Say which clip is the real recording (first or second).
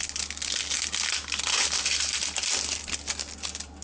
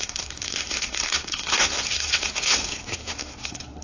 first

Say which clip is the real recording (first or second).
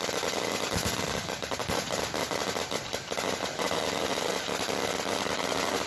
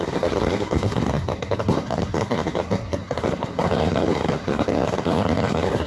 first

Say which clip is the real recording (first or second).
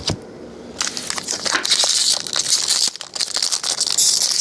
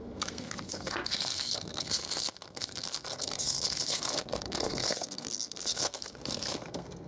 first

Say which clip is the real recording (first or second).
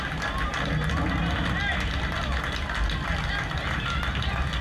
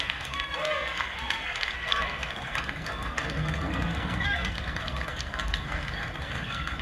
first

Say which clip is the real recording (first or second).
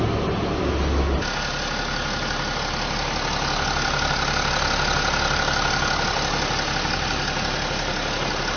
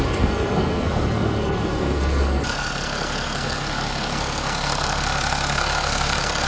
first